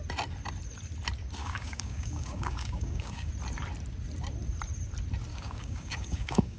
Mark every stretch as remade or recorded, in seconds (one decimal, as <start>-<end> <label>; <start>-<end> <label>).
0.0-1.4 recorded; 1.4-3.3 remade; 3.3-5.3 recorded; 5.3-6.6 remade